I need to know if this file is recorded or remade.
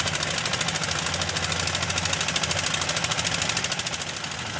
recorded